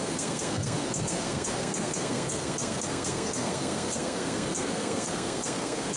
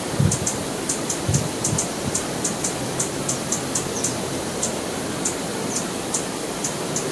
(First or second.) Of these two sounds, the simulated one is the first